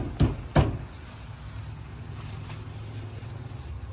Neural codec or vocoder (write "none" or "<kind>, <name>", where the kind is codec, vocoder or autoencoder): none